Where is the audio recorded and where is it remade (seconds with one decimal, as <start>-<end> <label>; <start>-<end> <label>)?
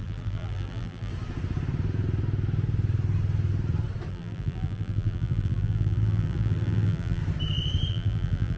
0.0-1.1 remade; 1.1-4.1 recorded; 4.1-7.2 remade; 7.2-7.9 recorded; 7.9-8.6 remade